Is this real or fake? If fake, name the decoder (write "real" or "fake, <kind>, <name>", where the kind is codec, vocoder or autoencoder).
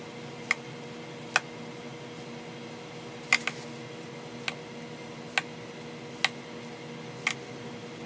real